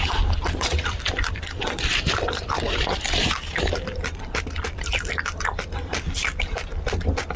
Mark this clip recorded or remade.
remade